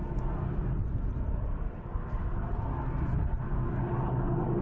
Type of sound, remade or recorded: recorded